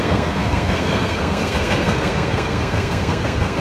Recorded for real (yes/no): no